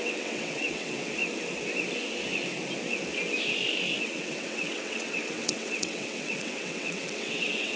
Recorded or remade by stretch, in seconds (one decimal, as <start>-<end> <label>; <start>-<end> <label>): 0.0-1.2 remade; 1.2-4.0 recorded; 4.0-7.8 remade